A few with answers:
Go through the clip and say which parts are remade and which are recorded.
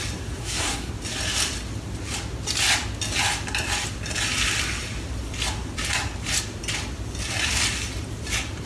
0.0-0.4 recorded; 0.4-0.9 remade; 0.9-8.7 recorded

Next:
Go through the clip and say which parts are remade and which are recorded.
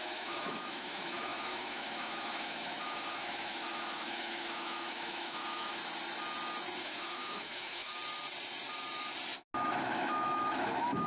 0.0-5.8 remade; 5.8-6.8 recorded; 6.8-7.9 remade; 7.9-9.8 recorded; 9.8-11.1 remade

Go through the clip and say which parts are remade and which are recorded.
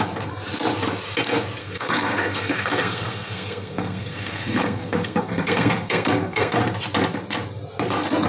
0.0-1.6 recorded; 1.6-6.6 remade; 6.6-8.3 recorded